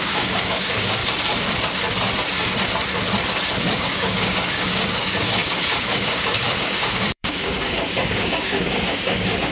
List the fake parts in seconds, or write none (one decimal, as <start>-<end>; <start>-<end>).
0.0-1.0; 3.8-9.5